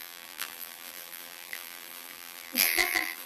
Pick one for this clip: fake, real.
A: fake